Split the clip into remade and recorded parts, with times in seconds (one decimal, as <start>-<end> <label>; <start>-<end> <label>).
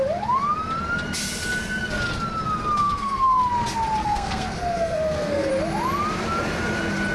0.0-2.8 recorded; 2.8-3.4 remade; 3.4-4.0 recorded; 4.0-5.5 remade; 5.5-7.1 recorded